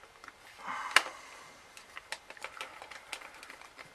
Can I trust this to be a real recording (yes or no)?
yes